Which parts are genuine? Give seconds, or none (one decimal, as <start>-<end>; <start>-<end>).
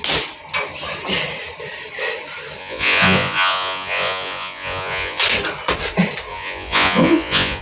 0.0-2.6; 5.2-6.3